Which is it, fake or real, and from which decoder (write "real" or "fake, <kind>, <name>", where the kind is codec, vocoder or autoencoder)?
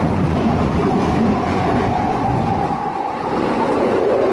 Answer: fake, vocoder, Vocos